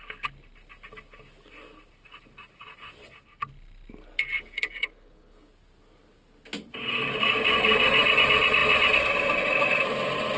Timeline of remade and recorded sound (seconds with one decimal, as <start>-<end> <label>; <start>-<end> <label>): 0.0-4.3 recorded; 4.3-5.5 remade; 5.5-10.4 recorded